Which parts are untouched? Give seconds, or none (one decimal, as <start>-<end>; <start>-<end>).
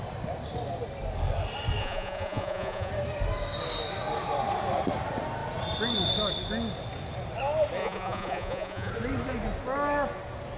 0.0-1.8; 2.9-7.8; 8.9-10.6